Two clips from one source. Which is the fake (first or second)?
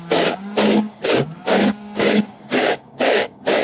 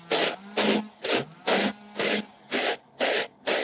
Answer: first